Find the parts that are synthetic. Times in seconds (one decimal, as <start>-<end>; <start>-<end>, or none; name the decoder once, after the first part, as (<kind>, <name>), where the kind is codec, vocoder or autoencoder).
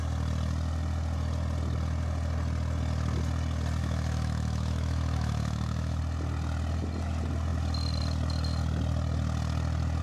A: 3.8-6.0 (autoencoder, DAC-VAE)